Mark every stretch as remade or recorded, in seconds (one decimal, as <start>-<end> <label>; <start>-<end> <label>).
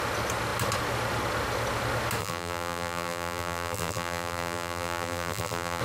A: 0.0-2.2 recorded; 2.2-5.8 remade